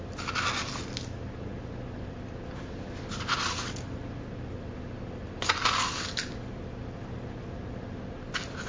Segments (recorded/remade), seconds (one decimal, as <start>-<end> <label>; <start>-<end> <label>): 0.0-8.7 recorded